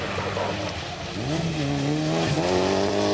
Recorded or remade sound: recorded